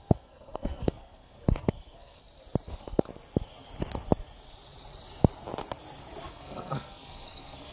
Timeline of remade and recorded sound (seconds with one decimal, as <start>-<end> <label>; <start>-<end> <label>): 0.0-2.2 remade; 2.2-2.7 recorded; 2.7-3.1 remade; 3.1-6.3 recorded; 6.3-7.7 remade